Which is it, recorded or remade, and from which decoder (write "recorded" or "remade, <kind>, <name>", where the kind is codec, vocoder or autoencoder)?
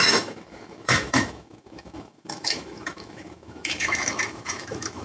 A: remade, autoencoder, DAC-VAE